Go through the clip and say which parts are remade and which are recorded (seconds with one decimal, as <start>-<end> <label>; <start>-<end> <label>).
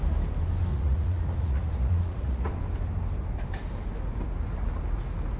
0.0-0.7 recorded; 0.7-2.5 remade; 2.5-5.4 recorded